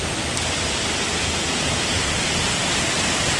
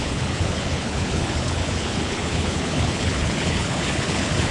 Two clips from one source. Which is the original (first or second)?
first